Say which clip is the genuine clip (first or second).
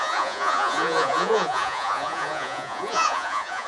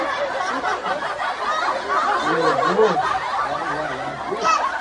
second